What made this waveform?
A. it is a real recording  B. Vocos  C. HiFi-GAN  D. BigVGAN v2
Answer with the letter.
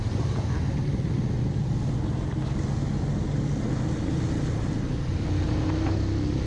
A